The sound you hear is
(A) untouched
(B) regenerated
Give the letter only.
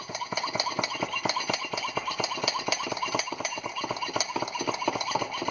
A